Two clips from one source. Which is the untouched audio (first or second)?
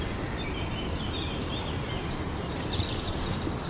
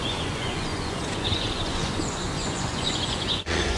first